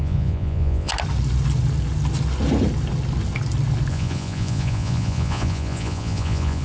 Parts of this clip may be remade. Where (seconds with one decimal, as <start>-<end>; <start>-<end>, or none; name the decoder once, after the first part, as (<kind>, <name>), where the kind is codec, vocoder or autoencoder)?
0.0-0.9 (vocoder, Vocos); 3.9-6.6